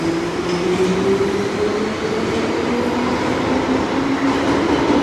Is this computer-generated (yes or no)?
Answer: no